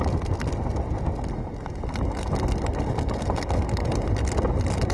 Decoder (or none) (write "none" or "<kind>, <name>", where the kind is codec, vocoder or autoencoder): none